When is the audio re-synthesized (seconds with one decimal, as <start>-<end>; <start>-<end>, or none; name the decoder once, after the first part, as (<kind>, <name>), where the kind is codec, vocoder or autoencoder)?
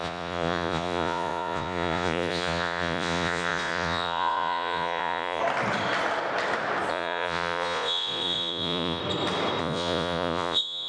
0.0-5.4 (vocoder, Vocos); 6.9-9.0; 9.6-10.9